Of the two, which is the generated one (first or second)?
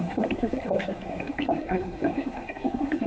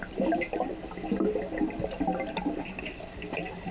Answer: first